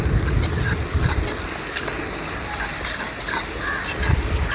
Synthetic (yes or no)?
no